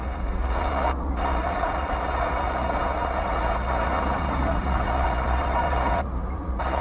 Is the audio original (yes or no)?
no